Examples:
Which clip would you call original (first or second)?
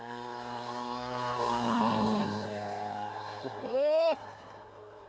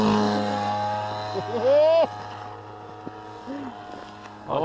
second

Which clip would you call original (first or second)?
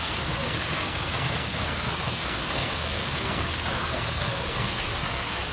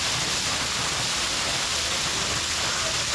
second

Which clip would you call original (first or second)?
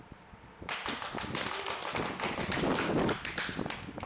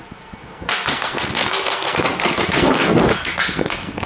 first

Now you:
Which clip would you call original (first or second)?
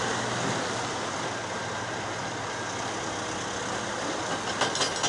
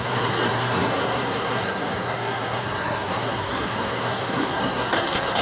first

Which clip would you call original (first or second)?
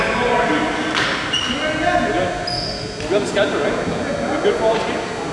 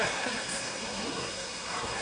first